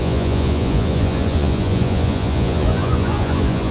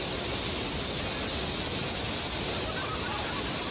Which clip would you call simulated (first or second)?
first